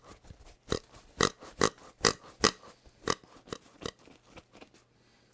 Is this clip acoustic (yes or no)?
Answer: yes